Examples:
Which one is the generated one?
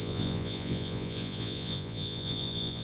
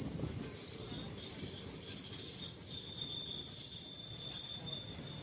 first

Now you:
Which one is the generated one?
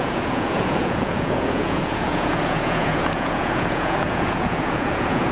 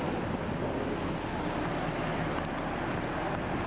first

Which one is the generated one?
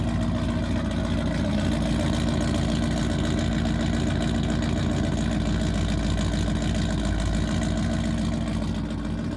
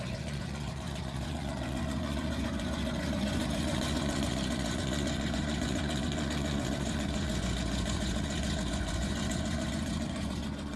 second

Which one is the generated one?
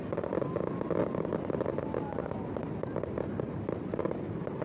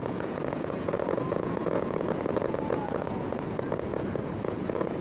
second